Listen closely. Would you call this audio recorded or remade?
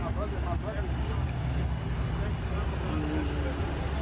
recorded